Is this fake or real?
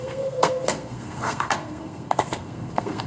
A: fake